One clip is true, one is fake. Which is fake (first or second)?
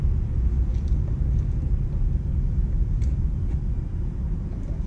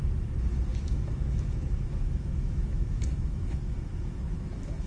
second